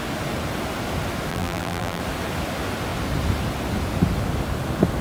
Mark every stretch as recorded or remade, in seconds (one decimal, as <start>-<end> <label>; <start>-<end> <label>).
0.0-1.3 recorded; 1.3-2.0 remade; 2.0-5.0 recorded